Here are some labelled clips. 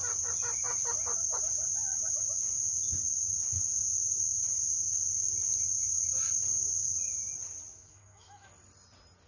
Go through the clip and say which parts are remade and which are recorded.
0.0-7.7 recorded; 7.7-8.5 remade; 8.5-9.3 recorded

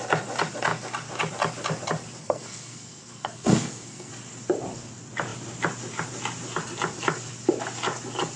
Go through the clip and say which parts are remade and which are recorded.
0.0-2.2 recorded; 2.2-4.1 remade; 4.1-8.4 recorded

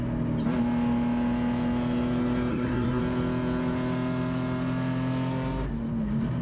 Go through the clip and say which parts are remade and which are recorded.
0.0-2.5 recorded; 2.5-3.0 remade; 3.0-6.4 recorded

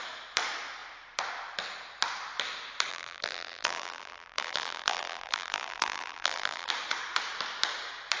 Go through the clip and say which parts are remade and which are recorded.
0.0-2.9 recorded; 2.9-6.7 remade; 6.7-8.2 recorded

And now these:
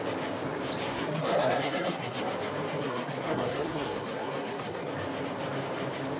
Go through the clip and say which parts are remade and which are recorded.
0.0-0.9 recorded; 0.9-2.2 remade; 2.2-2.8 recorded; 2.8-4.9 remade; 4.9-6.2 recorded